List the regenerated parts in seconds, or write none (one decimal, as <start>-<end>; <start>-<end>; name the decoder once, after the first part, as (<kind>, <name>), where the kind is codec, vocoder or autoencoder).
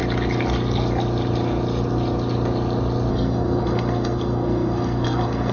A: 3.1-5.5 (codec, SNAC)